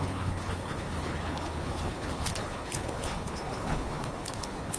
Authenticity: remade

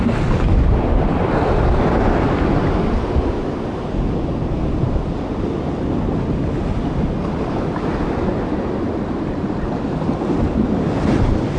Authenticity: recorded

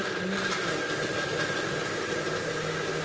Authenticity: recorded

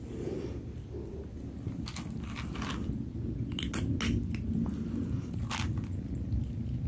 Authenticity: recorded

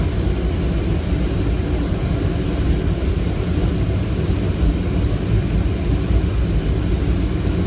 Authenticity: recorded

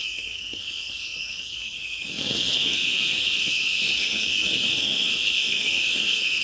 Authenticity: remade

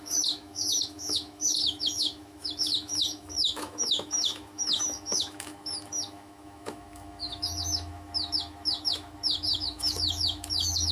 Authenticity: remade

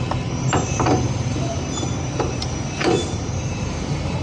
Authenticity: remade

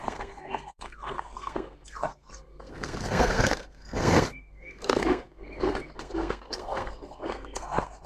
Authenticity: remade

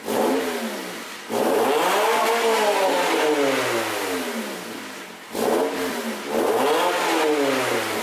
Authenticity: recorded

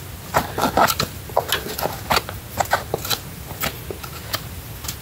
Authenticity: recorded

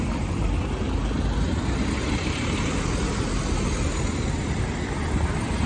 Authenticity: recorded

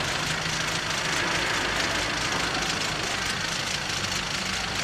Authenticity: recorded